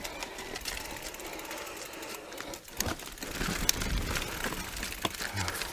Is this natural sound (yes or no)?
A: yes